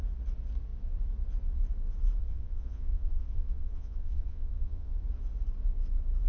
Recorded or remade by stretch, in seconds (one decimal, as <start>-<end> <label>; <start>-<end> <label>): 0.0-2.2 recorded; 2.2-4.9 remade; 4.9-6.3 recorded